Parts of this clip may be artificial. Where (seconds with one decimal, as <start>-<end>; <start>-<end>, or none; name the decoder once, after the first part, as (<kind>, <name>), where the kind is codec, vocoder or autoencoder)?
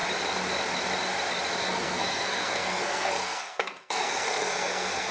1.6-5.1 (codec, SNAC)